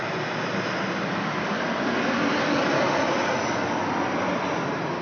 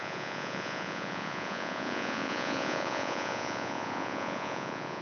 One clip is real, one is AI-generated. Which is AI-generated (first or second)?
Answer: second